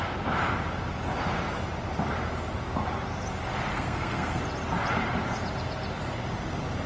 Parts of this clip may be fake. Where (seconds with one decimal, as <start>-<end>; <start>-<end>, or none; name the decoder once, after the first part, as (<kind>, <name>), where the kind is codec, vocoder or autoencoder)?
3.7-4.4 (codec, SNAC)